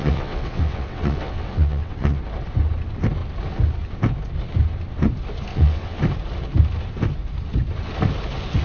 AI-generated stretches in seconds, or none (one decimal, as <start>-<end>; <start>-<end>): 0.0-2.2; 5.5-6.0